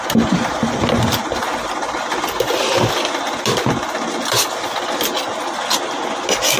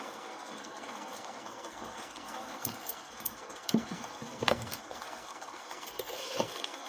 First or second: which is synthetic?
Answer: second